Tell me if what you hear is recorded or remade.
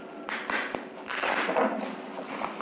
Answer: recorded